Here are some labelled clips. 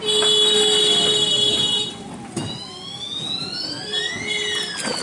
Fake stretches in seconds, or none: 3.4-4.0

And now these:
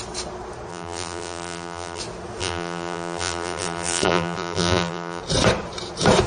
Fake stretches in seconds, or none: 0.7-2.0; 2.4-5.2

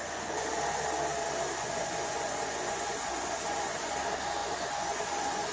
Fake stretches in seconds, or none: 0.0-0.8; 1.6-3.9; 4.4-5.5

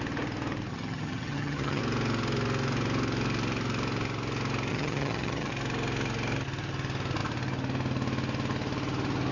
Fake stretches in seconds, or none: 0.7-1.8; 4.7-5.5

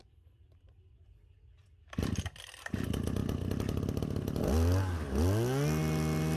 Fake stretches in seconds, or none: none

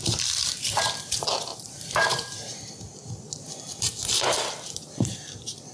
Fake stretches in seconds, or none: 0.0-5.7